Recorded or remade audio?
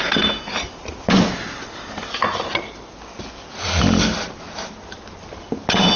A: recorded